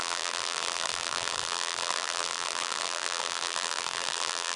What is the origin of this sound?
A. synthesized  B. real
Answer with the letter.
A